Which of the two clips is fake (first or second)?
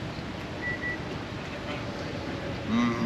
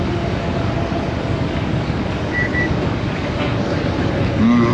second